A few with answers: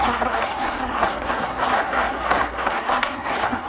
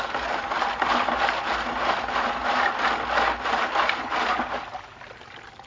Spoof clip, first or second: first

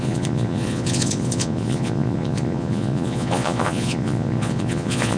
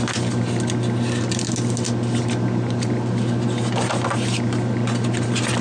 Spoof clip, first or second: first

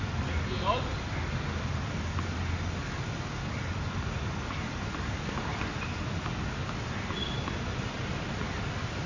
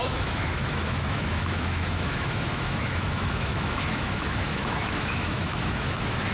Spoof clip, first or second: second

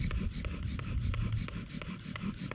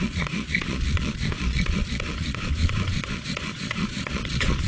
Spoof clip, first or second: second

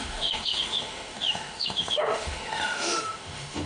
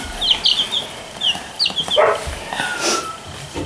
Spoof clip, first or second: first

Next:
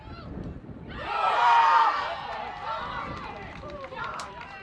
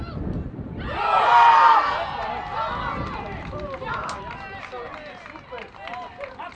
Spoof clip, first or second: first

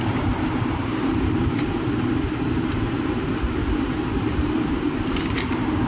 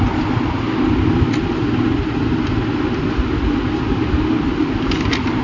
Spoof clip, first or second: first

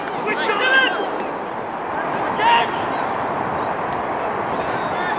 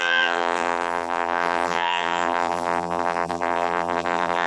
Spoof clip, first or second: second